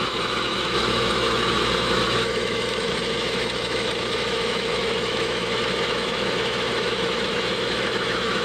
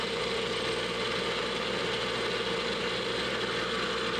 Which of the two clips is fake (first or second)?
first